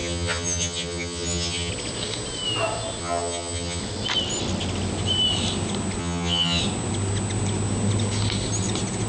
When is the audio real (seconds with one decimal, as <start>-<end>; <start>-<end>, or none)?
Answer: 1.7-3.0; 3.8-6.0; 6.6-9.1

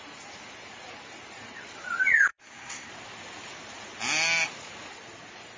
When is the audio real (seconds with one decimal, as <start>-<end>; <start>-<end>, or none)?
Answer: 0.0-2.3; 2.9-5.6

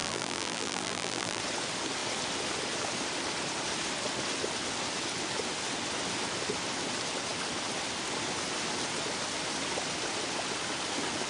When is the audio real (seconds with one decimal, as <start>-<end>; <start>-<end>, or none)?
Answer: 1.4-11.3

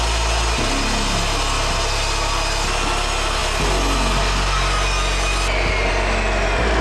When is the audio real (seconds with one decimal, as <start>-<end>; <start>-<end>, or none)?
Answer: 0.0-6.8

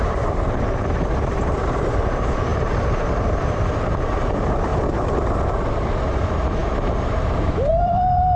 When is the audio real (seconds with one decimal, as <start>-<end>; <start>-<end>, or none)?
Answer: 4.7-5.9

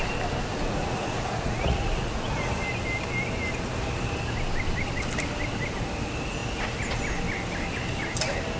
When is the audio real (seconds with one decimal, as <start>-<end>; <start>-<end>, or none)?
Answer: 0.0-0.5; 2.5-8.6

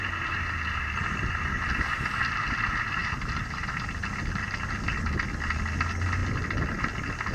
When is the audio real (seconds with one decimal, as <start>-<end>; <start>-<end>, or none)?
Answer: 0.0-3.0; 3.7-7.3

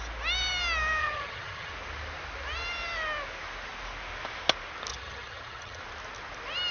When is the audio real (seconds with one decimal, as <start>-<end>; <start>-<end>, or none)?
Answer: 0.0-1.0; 1.7-4.9; 5.8-6.7